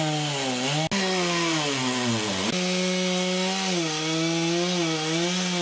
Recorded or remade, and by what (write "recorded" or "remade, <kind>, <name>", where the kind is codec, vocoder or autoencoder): recorded